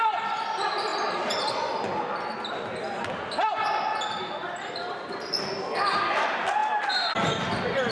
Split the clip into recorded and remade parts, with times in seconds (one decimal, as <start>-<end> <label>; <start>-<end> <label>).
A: 0.0-0.9 remade; 0.9-4.1 recorded; 4.1-7.9 remade